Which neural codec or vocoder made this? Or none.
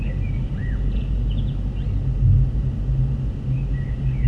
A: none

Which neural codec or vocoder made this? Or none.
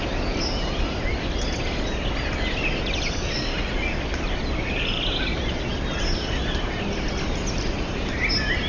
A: none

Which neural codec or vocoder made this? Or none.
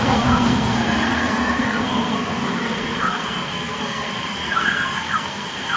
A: codec, SNAC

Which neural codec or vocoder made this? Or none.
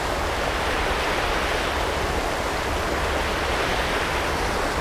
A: none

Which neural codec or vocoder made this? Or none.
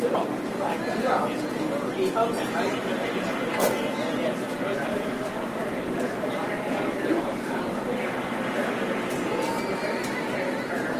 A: none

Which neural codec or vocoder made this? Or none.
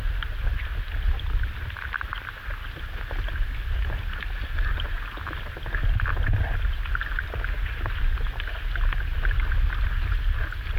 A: none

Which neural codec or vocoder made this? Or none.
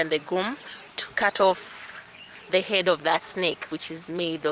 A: vocoder, Vocos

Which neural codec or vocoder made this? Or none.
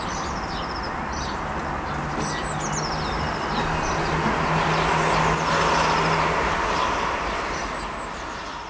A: none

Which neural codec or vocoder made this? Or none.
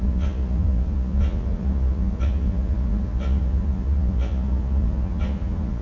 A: vocoder, Vocos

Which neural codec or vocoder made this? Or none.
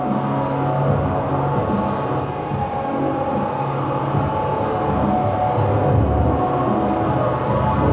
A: none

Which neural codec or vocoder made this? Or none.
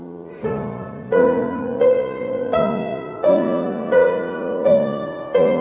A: vocoder, Vocos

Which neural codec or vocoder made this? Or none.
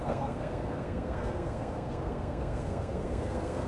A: codec, SNAC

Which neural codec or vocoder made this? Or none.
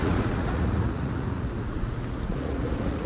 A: vocoder, Vocos